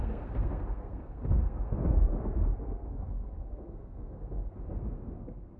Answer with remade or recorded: remade